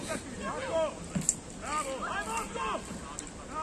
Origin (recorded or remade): recorded